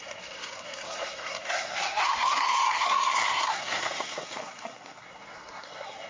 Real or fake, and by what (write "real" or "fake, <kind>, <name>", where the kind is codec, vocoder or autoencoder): fake, codec, SNAC